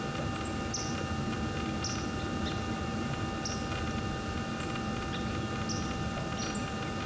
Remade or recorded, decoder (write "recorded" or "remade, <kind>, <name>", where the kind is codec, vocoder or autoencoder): recorded